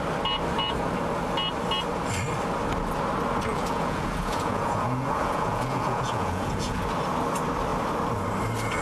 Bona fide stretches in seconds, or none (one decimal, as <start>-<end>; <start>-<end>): 0.0-3.5; 6.8-8.8